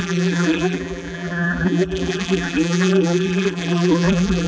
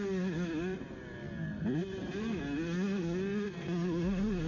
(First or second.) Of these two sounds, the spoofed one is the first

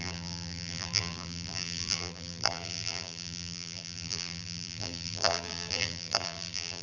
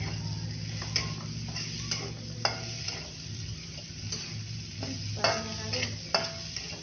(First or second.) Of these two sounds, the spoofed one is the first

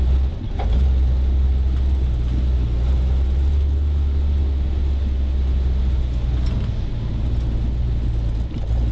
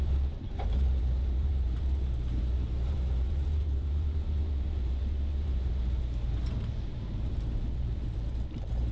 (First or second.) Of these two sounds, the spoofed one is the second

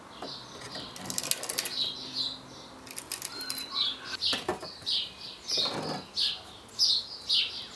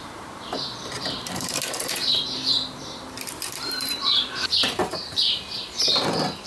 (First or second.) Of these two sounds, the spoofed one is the second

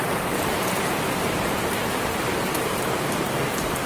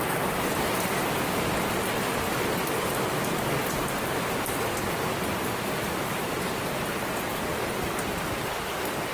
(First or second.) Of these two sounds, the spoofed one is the first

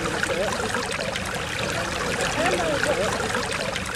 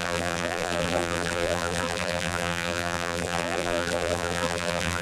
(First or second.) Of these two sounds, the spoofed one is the second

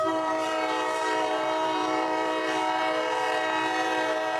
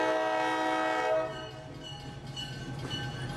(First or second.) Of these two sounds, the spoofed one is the first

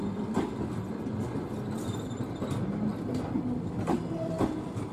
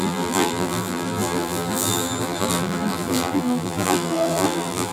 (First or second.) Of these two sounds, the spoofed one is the second